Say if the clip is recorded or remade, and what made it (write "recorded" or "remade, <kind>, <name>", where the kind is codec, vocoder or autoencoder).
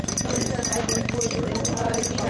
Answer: remade, vocoder, BigVGAN v2